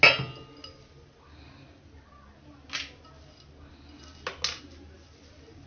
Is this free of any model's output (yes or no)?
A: yes